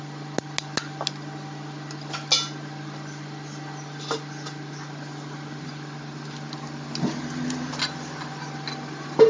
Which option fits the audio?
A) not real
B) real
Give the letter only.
B